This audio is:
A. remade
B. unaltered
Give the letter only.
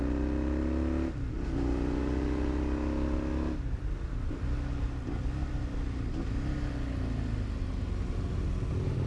B